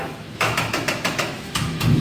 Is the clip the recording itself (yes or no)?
no